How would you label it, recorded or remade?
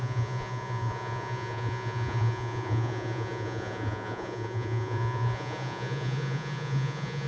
remade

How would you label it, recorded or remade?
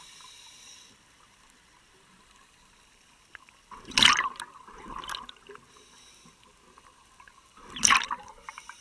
recorded